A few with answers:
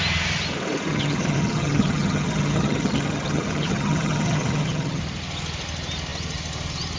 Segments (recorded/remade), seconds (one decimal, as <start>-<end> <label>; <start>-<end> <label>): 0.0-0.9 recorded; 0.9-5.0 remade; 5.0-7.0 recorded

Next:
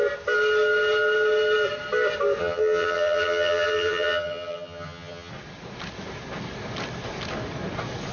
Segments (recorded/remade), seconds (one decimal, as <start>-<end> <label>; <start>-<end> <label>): 0.0-2.4 recorded; 2.4-5.3 remade; 5.3-8.1 recorded

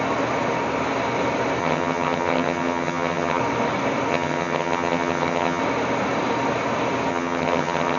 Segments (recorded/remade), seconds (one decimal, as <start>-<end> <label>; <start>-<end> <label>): 0.0-1.6 recorded; 1.6-3.4 remade; 3.4-4.1 recorded; 4.1-5.6 remade; 5.6-7.1 recorded; 7.1-8.0 remade

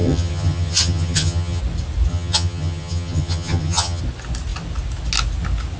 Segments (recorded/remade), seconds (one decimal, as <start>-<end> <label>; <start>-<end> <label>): 0.0-1.6 remade; 1.6-2.1 recorded; 2.1-4.0 remade; 4.0-5.8 recorded

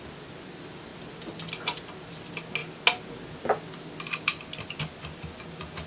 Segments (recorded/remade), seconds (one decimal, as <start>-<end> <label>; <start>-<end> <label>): 0.0-5.9 recorded

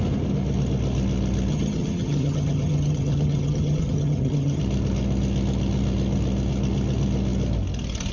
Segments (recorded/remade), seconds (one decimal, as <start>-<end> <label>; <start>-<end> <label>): 0.0-1.5 recorded; 1.5-4.6 remade; 4.6-8.1 recorded

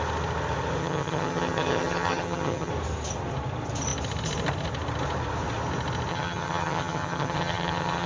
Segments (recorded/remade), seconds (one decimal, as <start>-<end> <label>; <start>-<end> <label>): 0.0-0.8 recorded; 0.8-2.7 remade; 2.7-6.1 recorded; 6.1-8.1 remade